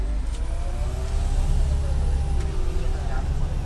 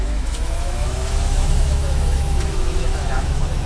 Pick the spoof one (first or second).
second